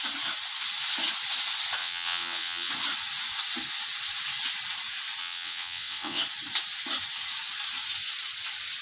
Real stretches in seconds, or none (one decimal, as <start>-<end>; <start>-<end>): 0.0-1.8; 2.7-5.2; 6.2-8.8